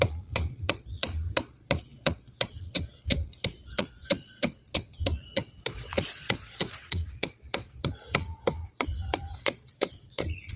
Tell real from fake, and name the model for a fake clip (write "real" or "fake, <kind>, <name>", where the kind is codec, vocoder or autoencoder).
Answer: fake, vocoder, Vocos